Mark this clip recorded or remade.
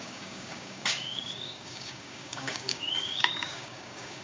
remade